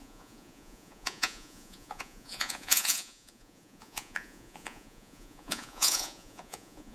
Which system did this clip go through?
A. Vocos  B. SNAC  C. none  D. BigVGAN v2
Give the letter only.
A